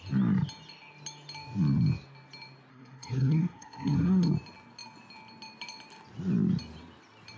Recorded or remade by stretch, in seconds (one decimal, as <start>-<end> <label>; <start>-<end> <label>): 0.0-2.7 recorded; 2.7-4.3 remade; 4.3-7.4 recorded